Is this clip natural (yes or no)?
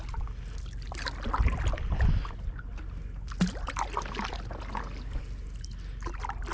yes